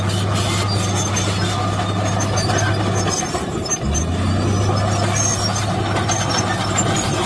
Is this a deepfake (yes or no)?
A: no